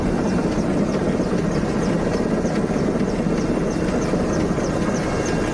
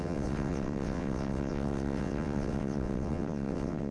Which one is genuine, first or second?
first